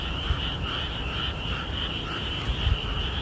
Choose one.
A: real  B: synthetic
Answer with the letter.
B